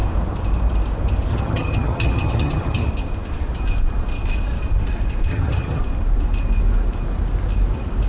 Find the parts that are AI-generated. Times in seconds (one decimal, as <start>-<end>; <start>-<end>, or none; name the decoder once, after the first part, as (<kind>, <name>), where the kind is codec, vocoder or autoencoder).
1.3-2.9 (vocoder, HiFi-GAN); 5.3-5.8